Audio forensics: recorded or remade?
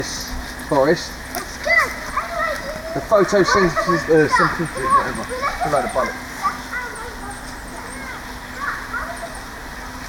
recorded